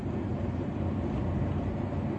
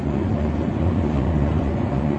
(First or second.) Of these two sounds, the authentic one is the first